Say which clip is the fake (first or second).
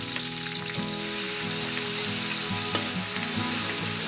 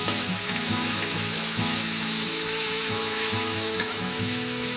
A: second